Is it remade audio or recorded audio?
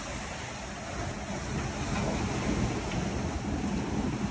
recorded